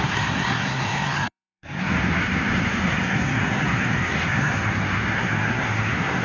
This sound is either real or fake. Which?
fake